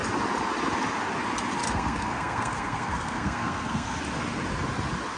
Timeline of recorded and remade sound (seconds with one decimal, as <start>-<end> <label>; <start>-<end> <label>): 0.0-1.6 recorded; 1.6-4.0 remade; 4.0-5.2 recorded